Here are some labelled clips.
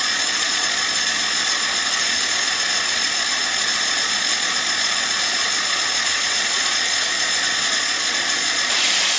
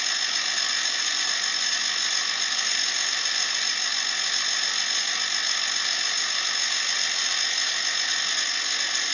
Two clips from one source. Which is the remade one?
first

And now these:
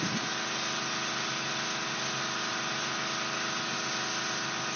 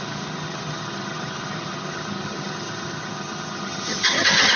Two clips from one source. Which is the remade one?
second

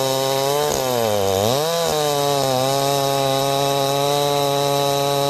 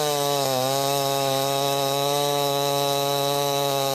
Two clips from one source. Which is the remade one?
second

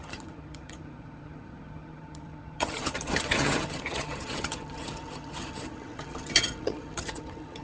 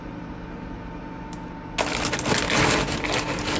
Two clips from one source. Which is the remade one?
first